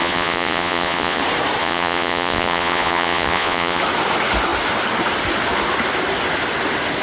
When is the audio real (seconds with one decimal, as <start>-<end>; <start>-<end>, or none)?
1.2-1.6; 3.8-7.0

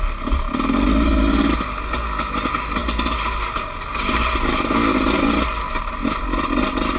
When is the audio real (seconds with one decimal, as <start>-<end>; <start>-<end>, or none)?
0.0-7.0